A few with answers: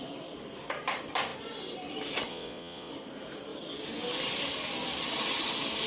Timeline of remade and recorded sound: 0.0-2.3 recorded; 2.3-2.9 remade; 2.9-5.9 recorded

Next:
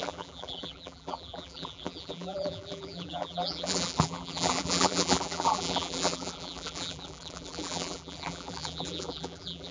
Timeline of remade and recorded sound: 0.0-9.7 remade

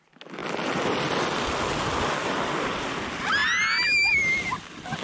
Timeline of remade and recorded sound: 0.0-5.0 recorded

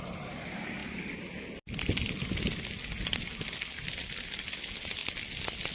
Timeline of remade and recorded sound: 0.0-5.7 recorded